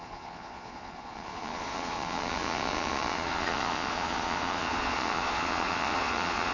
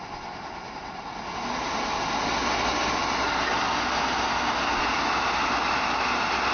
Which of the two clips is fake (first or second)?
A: first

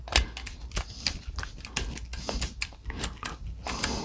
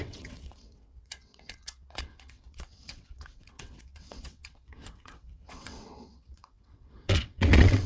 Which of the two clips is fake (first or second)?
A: second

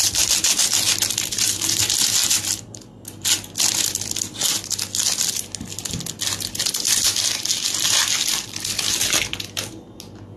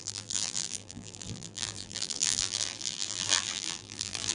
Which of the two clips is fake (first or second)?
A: second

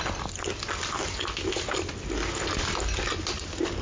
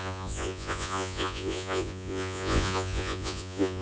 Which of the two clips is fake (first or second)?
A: second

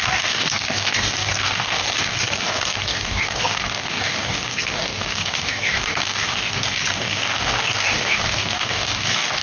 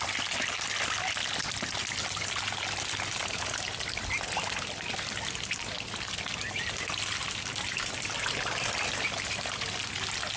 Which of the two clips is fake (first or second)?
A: first